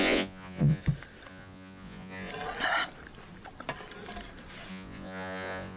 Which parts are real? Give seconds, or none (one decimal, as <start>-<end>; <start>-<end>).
0.8-1.3; 2.3-4.7